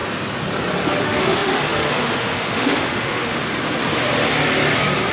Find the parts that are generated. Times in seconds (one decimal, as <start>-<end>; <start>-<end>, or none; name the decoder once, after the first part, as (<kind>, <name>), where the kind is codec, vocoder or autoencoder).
0.9-3.4 (autoencoder, DAC-VAE)